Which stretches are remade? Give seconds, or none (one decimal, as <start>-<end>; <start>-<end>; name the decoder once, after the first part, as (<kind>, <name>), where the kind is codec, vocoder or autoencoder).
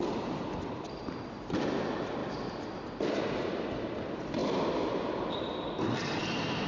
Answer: none